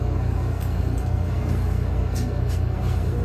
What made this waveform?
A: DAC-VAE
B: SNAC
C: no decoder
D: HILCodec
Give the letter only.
B